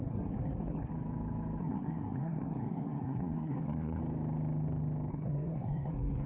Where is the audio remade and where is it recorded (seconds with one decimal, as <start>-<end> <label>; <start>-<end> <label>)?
0.0-0.9 remade; 0.9-1.6 recorded; 1.6-4.0 remade; 4.0-5.1 recorded; 5.1-6.3 remade